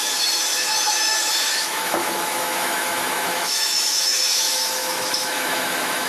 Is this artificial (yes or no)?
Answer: yes